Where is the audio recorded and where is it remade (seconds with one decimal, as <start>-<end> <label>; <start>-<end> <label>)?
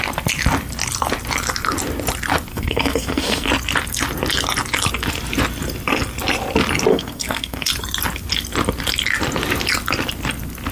0.0-2.5 recorded; 2.5-3.5 remade; 3.5-6.9 recorded; 6.9-7.7 remade; 7.7-10.7 recorded